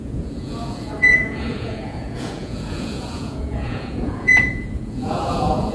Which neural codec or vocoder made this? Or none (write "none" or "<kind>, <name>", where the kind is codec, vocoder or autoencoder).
vocoder, Vocos